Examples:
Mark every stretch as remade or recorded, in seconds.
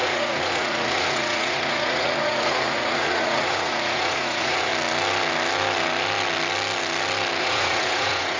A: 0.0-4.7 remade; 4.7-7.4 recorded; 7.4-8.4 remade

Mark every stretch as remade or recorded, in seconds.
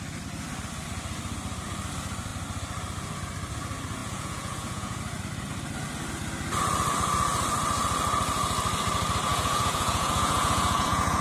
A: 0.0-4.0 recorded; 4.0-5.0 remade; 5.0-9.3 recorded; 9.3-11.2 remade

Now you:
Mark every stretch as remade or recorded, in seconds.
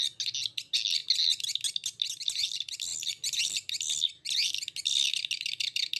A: 0.0-6.0 recorded